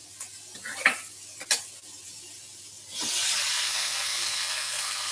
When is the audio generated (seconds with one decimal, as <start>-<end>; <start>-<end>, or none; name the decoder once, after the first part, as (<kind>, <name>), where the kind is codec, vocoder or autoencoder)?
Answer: 3.5-5.1 (codec, SNAC)